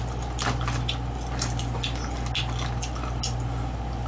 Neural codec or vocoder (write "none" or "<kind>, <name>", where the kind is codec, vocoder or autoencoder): none